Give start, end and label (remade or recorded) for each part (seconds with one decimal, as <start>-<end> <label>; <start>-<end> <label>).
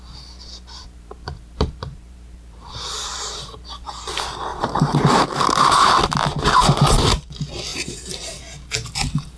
0.0-0.8 recorded; 0.8-4.1 remade; 4.1-4.5 recorded; 4.5-5.9 remade; 5.9-7.7 recorded; 7.7-8.4 remade; 8.4-9.4 recorded